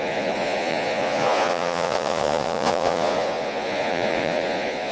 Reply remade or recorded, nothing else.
remade